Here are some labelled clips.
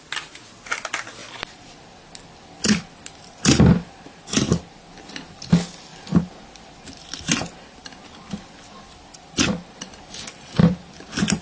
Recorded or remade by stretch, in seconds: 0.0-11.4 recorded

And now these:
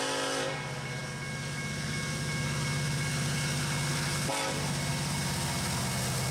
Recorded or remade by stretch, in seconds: 0.0-6.3 recorded

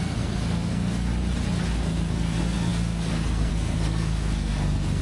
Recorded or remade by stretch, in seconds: 0.0-1.1 remade; 1.1-1.7 recorded; 1.7-5.0 remade

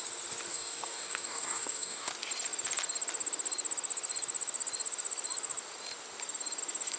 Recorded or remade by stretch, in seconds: 0.0-0.5 recorded; 0.5-2.1 remade; 2.1-7.0 recorded

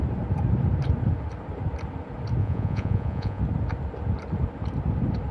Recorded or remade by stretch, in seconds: 0.0-2.4 recorded; 2.4-3.4 remade; 3.4-5.3 recorded